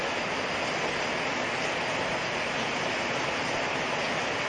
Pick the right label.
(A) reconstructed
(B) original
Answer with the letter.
B